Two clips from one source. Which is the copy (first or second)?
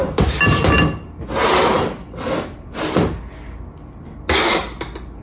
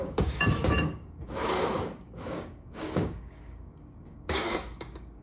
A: second